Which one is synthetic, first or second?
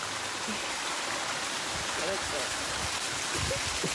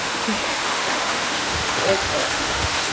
second